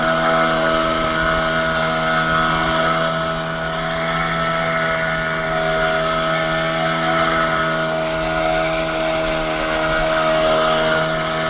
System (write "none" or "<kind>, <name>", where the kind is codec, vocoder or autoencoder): none